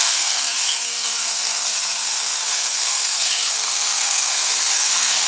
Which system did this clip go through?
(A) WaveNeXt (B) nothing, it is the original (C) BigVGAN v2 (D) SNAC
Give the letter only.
D